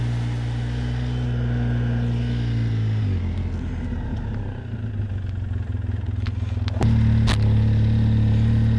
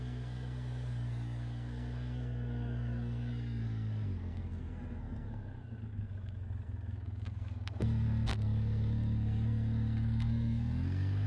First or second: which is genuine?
first